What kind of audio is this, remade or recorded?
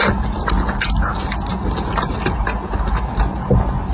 recorded